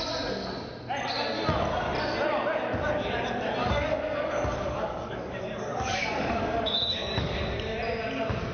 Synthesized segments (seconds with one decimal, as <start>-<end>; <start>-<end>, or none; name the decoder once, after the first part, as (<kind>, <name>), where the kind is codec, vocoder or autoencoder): 3.6-7.4 (codec, DAC)